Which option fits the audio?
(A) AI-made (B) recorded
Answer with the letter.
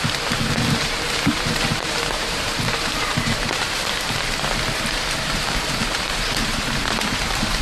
A